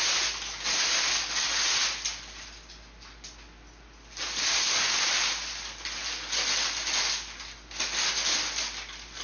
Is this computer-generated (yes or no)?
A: no